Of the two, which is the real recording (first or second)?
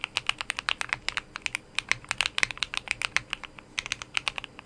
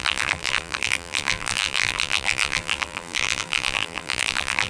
first